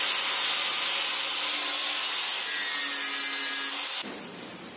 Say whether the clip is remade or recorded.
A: recorded